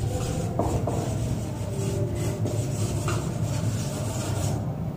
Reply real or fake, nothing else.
real